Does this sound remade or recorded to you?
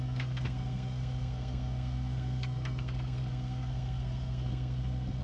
remade